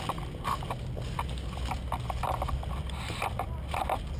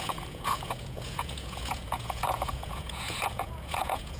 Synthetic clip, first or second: second